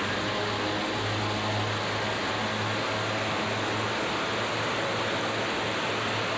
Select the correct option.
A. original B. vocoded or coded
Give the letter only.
A